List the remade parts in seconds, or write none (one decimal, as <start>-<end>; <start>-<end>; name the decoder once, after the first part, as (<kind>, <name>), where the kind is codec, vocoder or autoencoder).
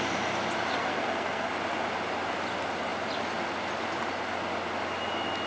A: 0.8-1.5 (codec, SNAC)